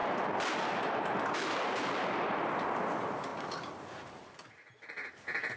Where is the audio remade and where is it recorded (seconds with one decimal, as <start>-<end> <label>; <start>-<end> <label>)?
0.0-5.6 recorded